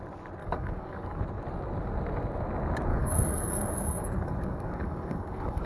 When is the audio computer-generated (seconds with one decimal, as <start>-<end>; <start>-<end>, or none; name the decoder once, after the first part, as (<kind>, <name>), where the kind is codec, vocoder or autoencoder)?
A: 0.4-1.2 (codec, DAC); 2.9-5.7